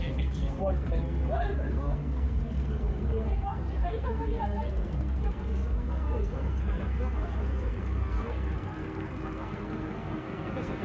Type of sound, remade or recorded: remade